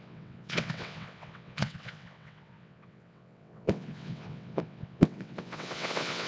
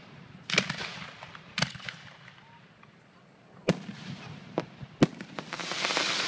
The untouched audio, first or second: second